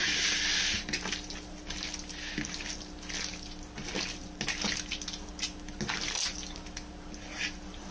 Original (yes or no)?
yes